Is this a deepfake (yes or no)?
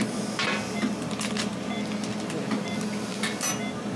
no